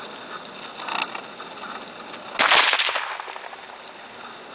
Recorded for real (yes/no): yes